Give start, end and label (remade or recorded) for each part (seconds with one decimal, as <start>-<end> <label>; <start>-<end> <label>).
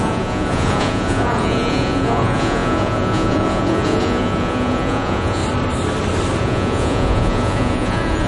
0.0-5.4 remade; 5.4-6.4 recorded; 6.4-8.3 remade